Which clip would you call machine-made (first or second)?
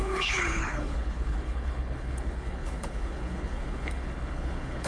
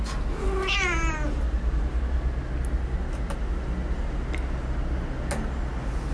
first